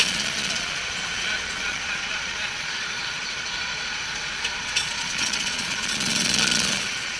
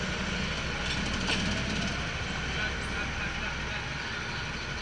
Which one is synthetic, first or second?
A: first